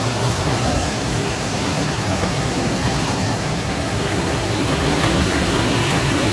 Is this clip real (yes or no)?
no